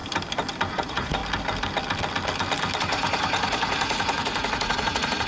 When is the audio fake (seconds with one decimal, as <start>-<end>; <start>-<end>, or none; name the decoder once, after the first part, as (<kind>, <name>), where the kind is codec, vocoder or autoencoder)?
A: 0.7-1.2 (vocoder, Vocos); 2.8-5.3